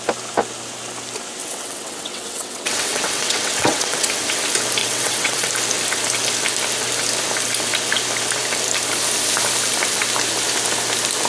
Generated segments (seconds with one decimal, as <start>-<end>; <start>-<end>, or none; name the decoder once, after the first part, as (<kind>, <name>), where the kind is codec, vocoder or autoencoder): 1.4-4.1 (vocoder, WaveNeXt); 4.8-5.5

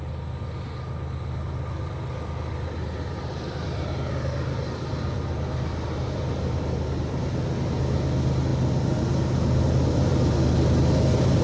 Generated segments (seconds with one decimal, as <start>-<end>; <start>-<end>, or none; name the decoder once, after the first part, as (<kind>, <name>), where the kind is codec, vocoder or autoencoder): none

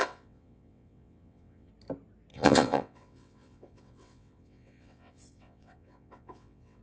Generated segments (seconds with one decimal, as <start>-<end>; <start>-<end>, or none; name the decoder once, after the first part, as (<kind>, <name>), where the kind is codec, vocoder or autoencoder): 0.0-1.7 (vocoder, WaveNeXt); 2.3-6.8

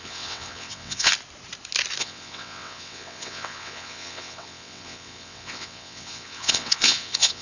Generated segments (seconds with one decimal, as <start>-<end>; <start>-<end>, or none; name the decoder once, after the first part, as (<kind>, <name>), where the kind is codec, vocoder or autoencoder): 0.0-1.1 (vocoder, WaveNeXt); 2.0-7.4

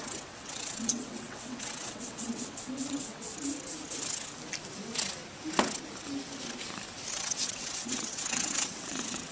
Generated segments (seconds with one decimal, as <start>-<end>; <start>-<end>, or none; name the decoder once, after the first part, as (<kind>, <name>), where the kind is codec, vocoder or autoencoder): 0.0-3.3 (vocoder, WaveNeXt); 7.1-9.3

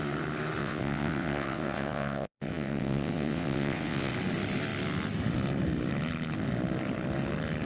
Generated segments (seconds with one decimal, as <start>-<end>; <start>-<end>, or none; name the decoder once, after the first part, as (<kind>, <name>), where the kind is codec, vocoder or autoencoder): 0.6-4.1 (vocoder, WaveNeXt)